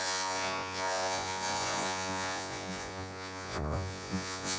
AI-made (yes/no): yes